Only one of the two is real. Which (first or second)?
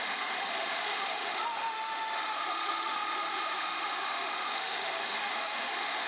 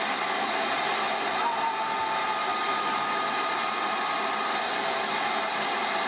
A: second